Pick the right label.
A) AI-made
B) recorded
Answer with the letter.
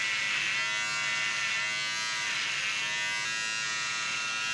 B